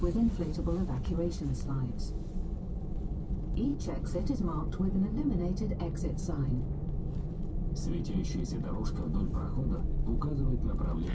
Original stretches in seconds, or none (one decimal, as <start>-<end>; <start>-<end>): 5.4-6.0